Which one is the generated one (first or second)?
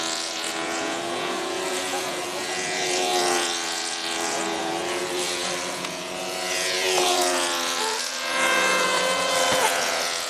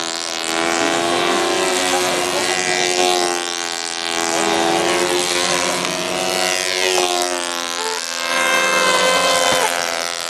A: first